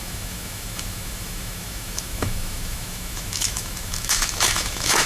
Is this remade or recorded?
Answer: remade